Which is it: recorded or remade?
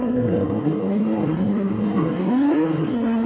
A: remade